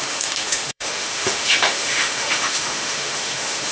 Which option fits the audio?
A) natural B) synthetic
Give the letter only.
B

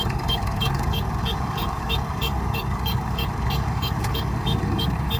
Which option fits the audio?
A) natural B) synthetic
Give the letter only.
B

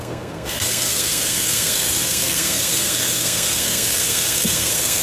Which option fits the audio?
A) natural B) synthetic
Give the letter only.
B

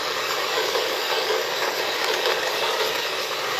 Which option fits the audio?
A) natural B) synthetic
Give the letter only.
B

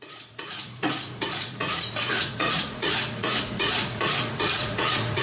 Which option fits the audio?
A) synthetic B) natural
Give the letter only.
A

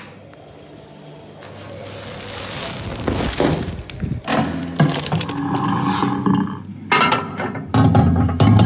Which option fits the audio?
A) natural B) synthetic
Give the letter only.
A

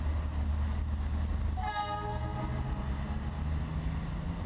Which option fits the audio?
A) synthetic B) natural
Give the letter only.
B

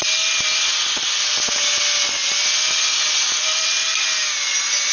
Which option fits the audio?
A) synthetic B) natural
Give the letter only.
B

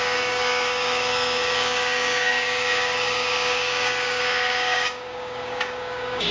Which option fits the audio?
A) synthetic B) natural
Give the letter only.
A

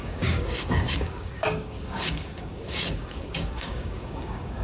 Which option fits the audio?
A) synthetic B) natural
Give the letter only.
A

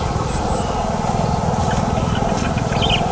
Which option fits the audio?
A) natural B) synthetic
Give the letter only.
A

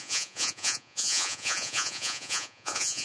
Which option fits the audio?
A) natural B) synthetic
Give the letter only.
B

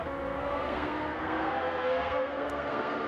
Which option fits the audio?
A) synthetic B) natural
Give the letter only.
A